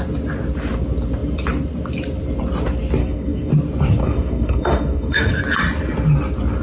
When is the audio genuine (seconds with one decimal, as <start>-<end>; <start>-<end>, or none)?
0.0-3.0; 3.5-4.0; 5.3-6.6